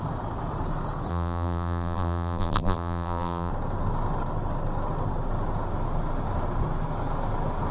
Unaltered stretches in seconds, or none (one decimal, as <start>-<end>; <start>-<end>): 0.0-1.1; 3.5-7.7